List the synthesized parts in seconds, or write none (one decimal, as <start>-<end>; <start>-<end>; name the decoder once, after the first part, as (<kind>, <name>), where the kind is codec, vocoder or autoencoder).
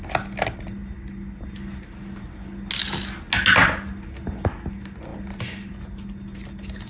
none